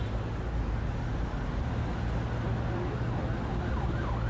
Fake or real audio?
real